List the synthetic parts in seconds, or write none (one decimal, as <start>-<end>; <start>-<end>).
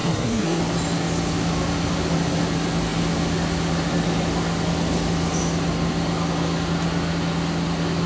0.0-0.6